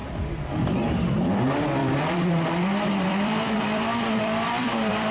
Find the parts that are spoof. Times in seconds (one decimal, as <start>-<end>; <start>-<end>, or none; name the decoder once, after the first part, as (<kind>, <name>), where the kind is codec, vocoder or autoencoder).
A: 0.0-1.4 (vocoder, BigVGAN v2); 1.8-5.1